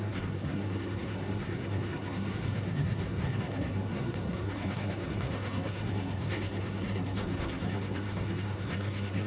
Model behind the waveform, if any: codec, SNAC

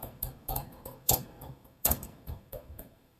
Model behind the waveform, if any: codec, SNAC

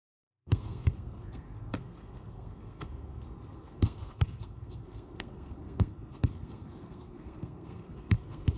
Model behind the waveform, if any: codec, SNAC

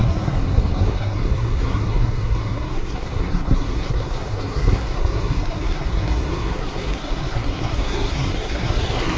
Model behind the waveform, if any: codec, SNAC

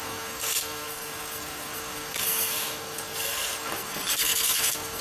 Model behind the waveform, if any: codec, SNAC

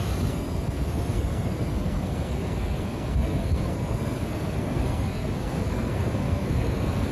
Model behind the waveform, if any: codec, SNAC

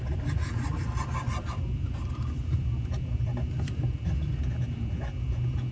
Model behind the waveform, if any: none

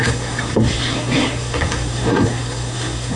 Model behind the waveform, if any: codec, SNAC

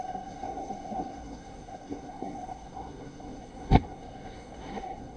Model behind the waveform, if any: codec, SNAC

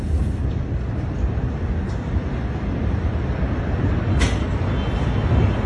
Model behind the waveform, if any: none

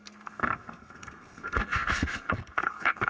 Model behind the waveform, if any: codec, SNAC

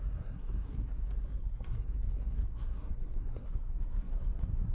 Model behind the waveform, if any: codec, SNAC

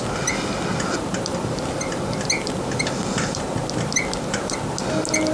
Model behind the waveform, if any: none